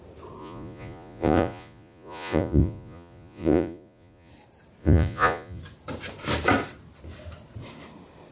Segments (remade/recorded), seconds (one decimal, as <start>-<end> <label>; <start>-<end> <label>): 0.0-0.4 recorded; 0.4-4.3 remade; 4.3-4.8 recorded; 4.8-5.6 remade; 5.6-8.3 recorded